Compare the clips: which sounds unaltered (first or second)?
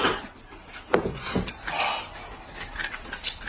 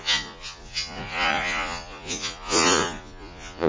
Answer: first